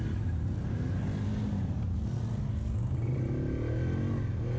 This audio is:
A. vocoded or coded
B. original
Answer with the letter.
B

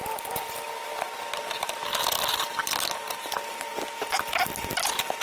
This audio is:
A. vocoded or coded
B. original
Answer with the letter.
B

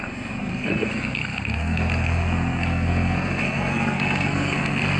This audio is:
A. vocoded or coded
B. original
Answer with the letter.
A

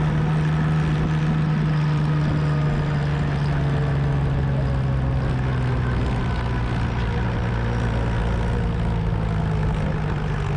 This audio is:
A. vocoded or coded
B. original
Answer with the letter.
B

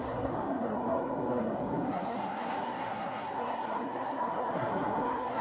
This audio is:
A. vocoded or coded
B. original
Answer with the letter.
A